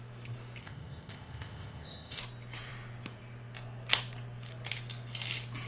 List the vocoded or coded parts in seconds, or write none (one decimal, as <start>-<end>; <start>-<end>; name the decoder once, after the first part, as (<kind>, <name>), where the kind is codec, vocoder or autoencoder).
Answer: 0.6-2.2 (codec, ZipCodec)